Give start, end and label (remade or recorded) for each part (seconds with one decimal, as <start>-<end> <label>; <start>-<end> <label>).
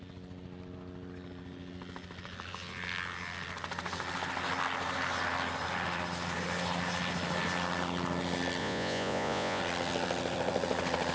0.0-8.6 recorded; 8.6-9.6 remade; 9.6-11.1 recorded